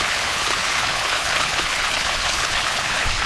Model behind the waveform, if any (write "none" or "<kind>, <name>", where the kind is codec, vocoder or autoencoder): codec, HILCodec